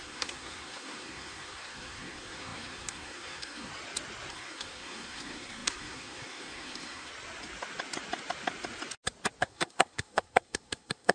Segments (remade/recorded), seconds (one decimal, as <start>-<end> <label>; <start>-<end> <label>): 0.0-3.7 remade; 3.7-4.3 recorded; 4.3-7.1 remade; 7.1-9.4 recorded; 9.4-11.1 remade

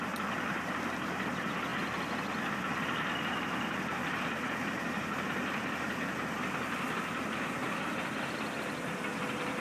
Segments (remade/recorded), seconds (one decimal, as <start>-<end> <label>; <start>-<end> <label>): 0.0-9.6 recorded